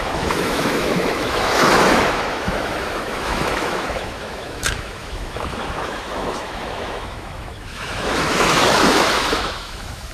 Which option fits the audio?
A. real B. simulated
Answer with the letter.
B